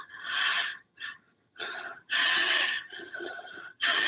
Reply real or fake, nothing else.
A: fake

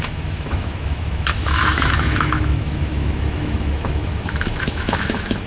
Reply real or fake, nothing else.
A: fake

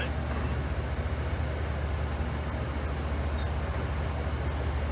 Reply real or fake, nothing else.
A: real